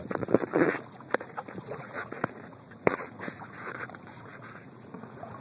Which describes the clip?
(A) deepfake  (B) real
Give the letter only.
A